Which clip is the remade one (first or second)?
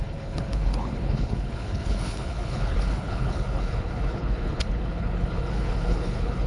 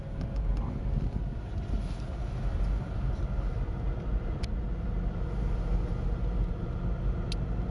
first